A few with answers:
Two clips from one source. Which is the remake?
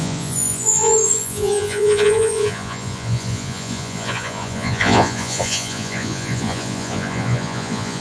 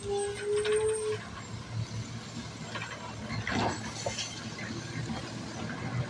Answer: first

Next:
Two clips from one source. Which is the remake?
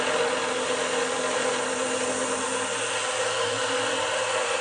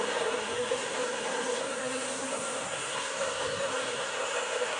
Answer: second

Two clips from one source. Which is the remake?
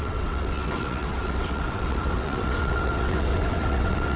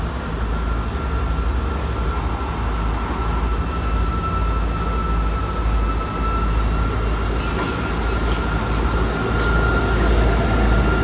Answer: first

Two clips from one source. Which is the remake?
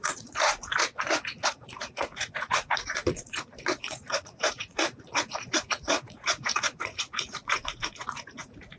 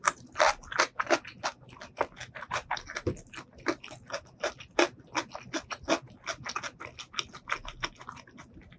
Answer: first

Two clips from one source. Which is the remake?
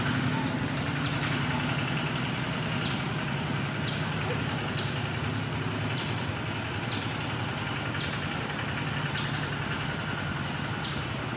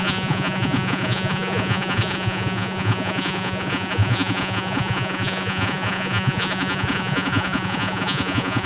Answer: second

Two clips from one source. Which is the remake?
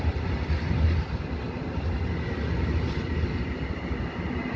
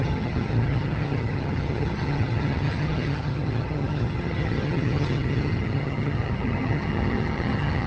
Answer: second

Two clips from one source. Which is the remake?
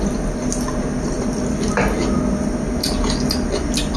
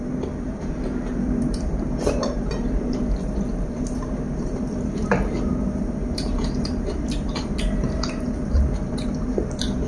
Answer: second